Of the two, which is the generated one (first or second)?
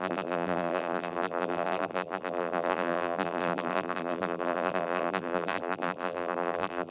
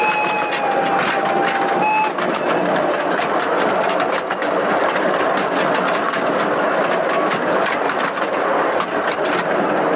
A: first